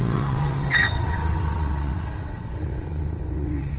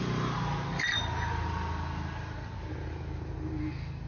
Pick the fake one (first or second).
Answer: first